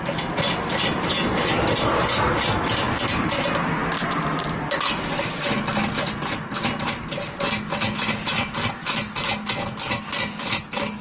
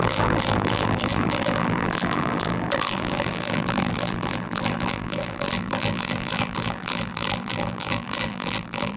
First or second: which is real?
first